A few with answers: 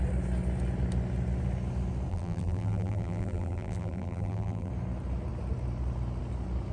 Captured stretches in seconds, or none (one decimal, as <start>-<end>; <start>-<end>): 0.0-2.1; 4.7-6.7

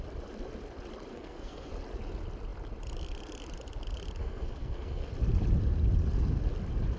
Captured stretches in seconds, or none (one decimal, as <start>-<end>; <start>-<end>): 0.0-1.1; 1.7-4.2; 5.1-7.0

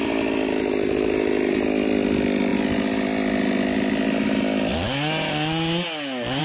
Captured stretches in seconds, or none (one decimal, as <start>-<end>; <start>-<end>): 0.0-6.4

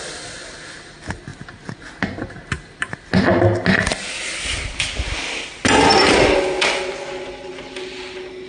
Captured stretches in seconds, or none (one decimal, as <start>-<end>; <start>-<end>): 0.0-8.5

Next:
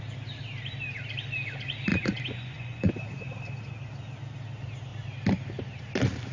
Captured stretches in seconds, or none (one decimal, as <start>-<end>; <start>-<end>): 0.0-1.9; 2.9-6.3